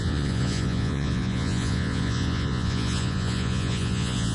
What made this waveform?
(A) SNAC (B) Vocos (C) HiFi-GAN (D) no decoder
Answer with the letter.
B